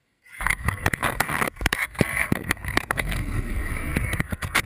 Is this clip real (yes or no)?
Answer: no